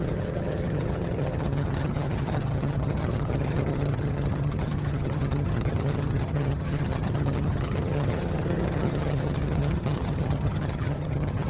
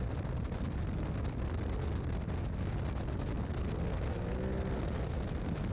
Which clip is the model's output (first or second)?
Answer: first